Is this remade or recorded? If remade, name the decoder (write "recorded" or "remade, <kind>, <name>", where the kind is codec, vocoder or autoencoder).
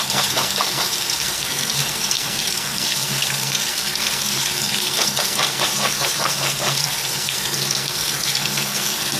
remade, codec, SNAC